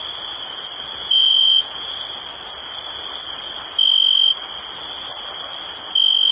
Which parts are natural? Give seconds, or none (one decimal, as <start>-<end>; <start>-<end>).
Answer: 0.0-1.0; 1.9-6.3